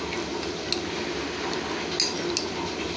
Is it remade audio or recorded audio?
recorded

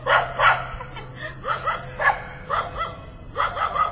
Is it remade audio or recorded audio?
recorded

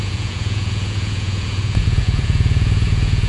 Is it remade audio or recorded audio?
remade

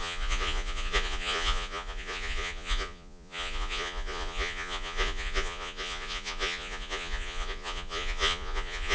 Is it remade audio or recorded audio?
remade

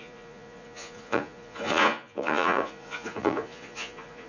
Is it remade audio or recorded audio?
remade